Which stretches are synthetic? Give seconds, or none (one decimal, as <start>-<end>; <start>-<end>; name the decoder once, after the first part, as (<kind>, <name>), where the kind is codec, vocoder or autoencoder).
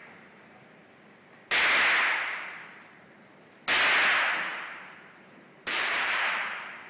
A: 4.5-6.9 (vocoder, BigVGAN v2)